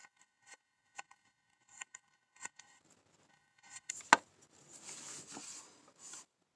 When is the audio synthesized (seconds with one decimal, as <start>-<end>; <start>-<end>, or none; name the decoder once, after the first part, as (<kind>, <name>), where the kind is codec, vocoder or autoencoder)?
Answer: 0.0-2.8 (codec, DAC); 3.3-3.9